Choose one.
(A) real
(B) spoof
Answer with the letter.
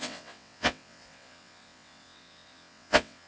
B